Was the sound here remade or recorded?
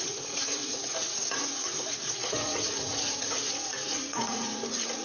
remade